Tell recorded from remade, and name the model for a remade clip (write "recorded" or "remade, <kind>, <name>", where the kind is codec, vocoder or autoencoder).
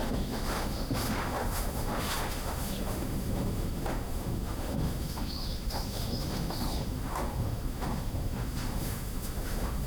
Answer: remade, autoencoder, DAC-VAE